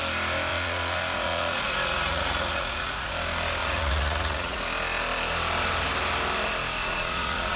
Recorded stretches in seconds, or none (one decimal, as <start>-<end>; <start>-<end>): 0.0-0.5; 3.1-3.6; 4.6-6.8